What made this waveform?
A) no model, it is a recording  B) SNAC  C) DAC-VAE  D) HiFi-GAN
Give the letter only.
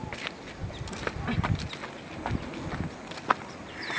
A